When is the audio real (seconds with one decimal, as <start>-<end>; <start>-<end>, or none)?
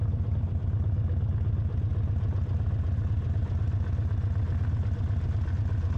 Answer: 0.0-6.0